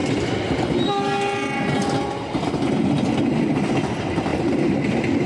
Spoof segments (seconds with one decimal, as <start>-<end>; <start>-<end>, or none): 3.2-4.3